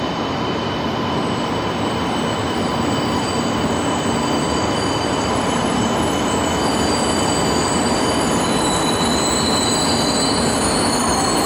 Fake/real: real